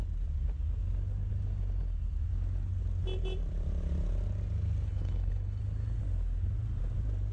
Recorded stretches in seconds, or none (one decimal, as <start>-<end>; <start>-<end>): 0.0-4.9; 5.6-7.3